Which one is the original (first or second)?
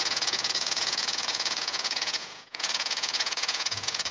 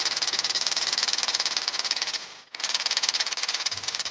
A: second